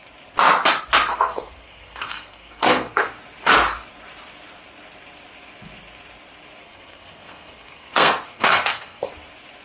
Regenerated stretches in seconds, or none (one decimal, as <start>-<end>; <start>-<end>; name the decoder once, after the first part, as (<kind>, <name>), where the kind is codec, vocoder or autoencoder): 1.1-3.1 (codec, SNAC); 6.6-9.1